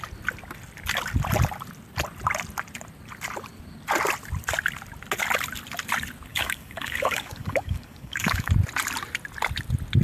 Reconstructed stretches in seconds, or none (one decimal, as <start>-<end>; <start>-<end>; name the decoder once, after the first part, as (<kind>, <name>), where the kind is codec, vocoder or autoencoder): 6.3-8.5 (codec, DAC)